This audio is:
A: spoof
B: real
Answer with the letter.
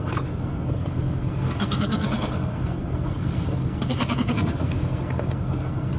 A